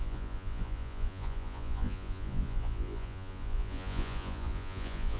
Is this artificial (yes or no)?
yes